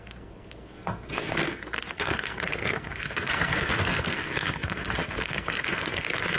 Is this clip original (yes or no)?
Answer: no